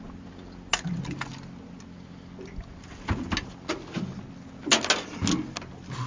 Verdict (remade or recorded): recorded